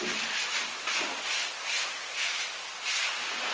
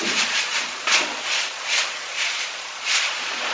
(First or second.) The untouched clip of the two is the first